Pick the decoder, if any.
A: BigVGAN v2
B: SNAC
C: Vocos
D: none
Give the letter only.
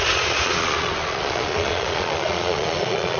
C